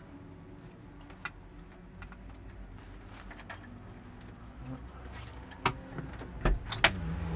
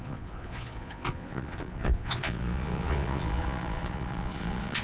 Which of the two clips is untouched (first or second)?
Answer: first